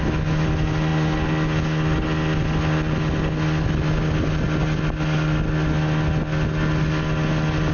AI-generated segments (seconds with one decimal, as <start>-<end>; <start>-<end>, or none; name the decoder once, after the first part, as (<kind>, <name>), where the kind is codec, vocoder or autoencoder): none

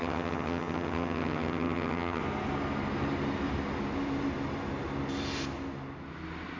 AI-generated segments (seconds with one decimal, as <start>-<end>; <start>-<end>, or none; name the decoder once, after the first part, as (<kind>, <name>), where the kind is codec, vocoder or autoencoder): 0.0-2.2 (vocoder, HiFi-GAN)

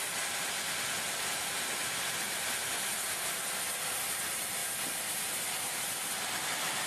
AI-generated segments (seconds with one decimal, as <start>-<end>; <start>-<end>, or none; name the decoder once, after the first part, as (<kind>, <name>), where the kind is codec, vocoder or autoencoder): none

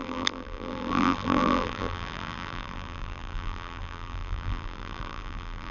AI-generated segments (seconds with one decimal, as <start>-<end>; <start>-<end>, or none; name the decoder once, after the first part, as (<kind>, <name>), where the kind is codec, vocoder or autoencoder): 0.0-5.7 (vocoder, BigVGAN v2)

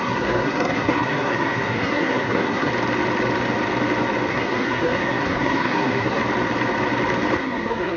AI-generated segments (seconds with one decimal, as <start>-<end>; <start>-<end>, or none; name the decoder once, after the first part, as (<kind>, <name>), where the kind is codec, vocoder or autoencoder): 0.0-2.7 (codec, SNAC); 4.3-6.2; 7.4-8.0

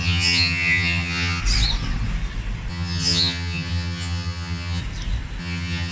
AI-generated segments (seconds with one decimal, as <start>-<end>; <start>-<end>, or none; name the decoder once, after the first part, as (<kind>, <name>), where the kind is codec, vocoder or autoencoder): 0.0-1.4 (vocoder, HiFi-GAN); 2.7-4.8; 5.4-5.9

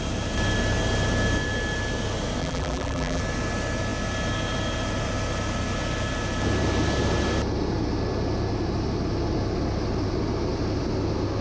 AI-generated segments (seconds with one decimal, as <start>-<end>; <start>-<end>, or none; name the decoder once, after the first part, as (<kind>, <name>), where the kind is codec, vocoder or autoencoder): 2.4-3.2 (vocoder, BigVGAN v2)